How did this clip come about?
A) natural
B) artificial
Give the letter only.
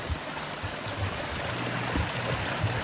A